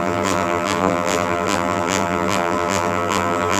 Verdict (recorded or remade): remade